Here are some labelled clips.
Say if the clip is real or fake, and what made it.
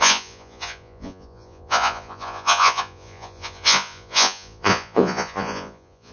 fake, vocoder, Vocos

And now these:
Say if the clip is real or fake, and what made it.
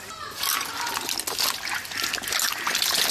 real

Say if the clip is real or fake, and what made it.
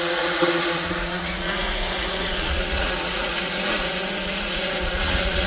fake, vocoder, Vocos